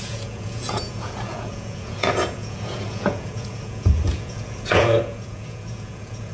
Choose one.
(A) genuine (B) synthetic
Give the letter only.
B